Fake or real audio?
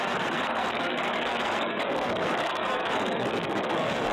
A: fake